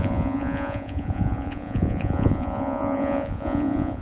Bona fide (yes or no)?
no